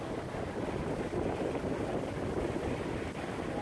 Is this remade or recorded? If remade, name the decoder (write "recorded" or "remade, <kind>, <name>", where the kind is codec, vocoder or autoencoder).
recorded